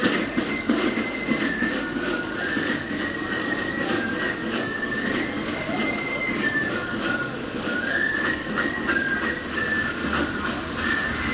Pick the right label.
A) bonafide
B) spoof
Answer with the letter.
B